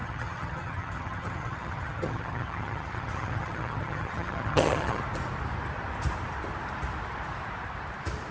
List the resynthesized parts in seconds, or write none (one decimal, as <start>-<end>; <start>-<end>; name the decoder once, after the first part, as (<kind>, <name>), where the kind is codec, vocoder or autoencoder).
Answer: 0.0-5.0 (vocoder, HiFi-GAN)